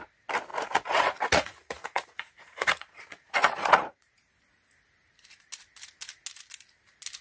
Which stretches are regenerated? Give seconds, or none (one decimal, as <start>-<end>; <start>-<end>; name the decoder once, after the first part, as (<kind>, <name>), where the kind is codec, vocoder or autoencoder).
0.5-4.1 (vocoder, Vocos)